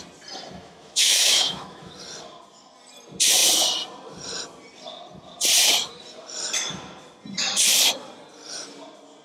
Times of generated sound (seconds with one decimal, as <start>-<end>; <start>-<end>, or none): 0.6-1.9